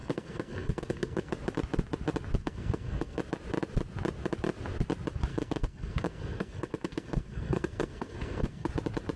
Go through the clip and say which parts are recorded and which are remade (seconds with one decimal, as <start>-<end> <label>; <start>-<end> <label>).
0.0-1.3 remade; 1.3-2.4 recorded; 2.4-3.2 remade; 3.2-5.3 recorded; 5.3-8.7 remade; 8.7-9.2 recorded